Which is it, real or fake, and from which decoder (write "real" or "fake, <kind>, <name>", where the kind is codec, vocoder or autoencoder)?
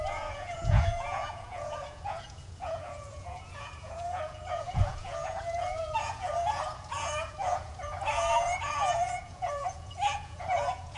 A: fake, vocoder, Vocos